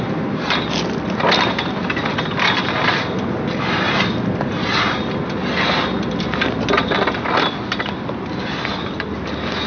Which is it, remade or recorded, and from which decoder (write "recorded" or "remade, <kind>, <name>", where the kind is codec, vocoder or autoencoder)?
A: recorded